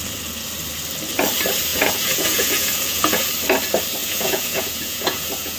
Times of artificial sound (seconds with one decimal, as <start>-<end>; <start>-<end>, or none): 1.7-3.3; 4.0-5.6